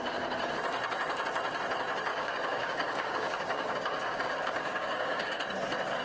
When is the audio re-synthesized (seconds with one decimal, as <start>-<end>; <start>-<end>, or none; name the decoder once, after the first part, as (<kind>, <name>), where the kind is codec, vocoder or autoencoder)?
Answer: 2.1-5.4 (codec, DAC)